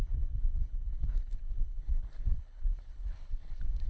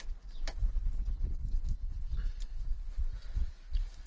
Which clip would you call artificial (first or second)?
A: first